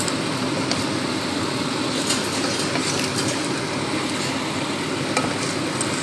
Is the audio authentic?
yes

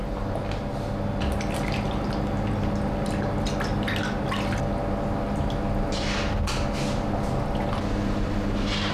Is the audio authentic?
yes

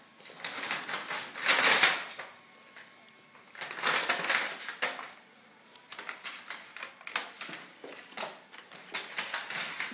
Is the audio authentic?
yes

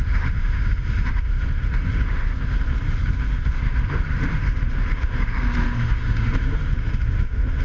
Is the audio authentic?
no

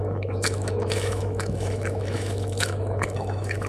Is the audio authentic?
no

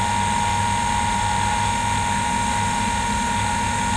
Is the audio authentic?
no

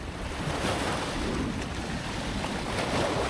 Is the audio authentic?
yes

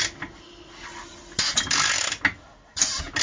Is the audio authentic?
yes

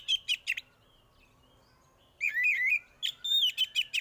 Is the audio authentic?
yes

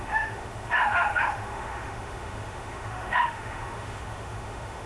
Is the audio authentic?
no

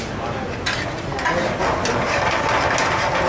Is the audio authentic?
yes